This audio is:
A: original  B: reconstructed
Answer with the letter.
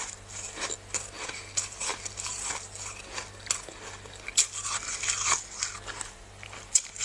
A